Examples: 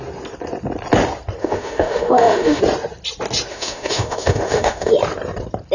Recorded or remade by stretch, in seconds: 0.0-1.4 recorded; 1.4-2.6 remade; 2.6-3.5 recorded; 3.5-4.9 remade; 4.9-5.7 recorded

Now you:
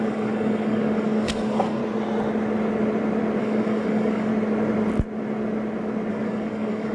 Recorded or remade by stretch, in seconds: 0.0-1.8 remade; 1.8-3.4 recorded; 3.4-4.3 remade; 4.3-6.1 recorded; 6.1-6.9 remade

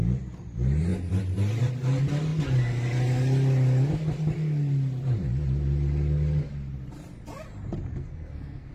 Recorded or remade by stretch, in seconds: 0.0-7.9 recorded; 7.9-8.7 remade

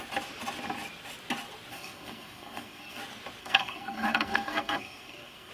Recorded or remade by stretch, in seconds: 0.0-1.7 recorded; 1.7-3.0 remade; 3.0-3.4 recorded; 3.4-5.5 remade

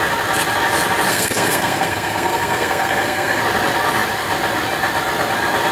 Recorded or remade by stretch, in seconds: 0.0-1.1 recorded; 1.1-3.4 remade; 3.4-5.7 recorded

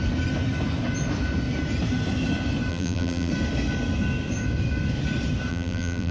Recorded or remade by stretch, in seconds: 0.0-2.7 recorded; 2.7-3.3 remade; 3.3-5.5 recorded; 5.5-6.1 remade

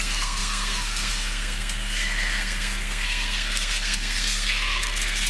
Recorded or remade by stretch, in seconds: 0.0-5.3 remade